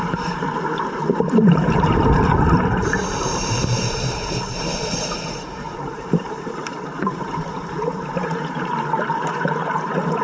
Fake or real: fake